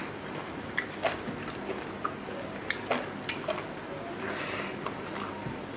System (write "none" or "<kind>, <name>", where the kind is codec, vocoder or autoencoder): none